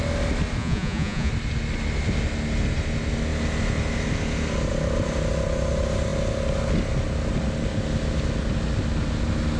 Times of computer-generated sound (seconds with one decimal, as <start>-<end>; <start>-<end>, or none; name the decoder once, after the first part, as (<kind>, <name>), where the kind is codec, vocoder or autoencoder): 0.6-1.3 (vocoder, Vocos)